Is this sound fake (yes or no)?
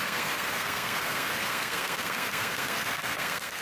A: yes